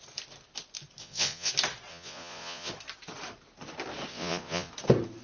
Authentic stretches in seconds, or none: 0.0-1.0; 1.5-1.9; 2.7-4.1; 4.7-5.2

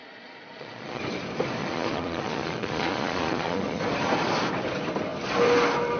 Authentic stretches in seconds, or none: 1.0-1.6; 3.8-6.0

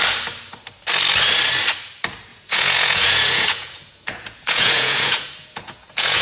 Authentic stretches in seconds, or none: 0.0-2.3

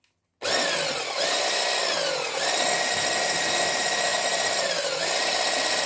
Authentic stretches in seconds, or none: 0.0-5.9

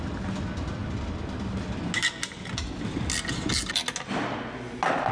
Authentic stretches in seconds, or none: 0.0-5.1

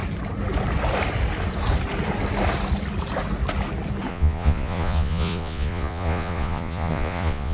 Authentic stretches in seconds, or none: 0.0-4.1